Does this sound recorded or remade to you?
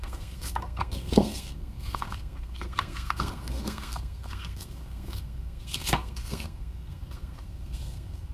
remade